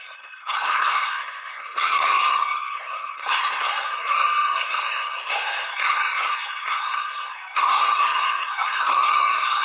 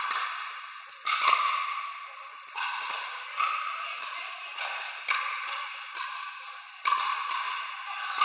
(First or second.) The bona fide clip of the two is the second